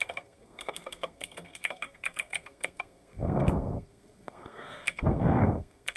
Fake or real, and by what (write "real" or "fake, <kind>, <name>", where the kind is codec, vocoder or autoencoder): fake, codec, SNAC